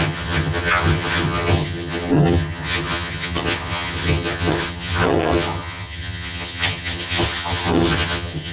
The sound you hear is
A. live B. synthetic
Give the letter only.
B